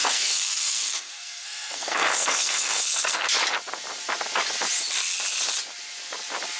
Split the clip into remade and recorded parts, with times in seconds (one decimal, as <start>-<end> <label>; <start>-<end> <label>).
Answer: 0.0-3.3 remade; 3.3-6.6 recorded